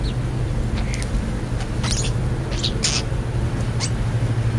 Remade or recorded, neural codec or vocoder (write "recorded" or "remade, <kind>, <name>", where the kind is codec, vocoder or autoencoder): recorded